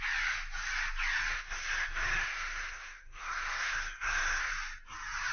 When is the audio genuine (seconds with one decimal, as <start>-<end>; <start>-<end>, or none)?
0.0-1.3; 4.5-5.3